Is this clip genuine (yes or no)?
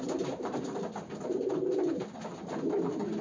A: yes